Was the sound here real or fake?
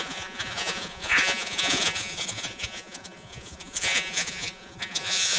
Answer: fake